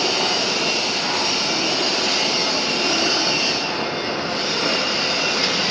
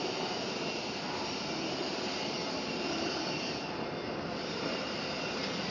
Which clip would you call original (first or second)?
first